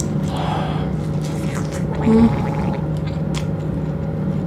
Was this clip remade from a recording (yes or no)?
no